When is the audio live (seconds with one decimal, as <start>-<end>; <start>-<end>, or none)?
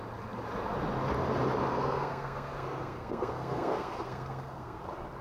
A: 0.0-1.7; 4.8-5.2